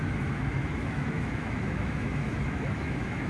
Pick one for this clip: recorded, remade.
remade